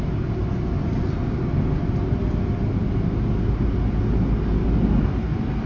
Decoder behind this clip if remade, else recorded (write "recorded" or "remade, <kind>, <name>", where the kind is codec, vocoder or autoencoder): recorded